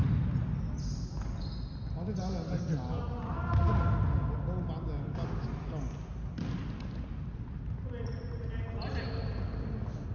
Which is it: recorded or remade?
recorded